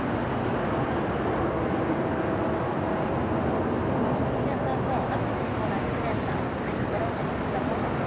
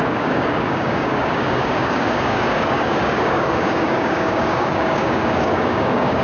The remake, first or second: second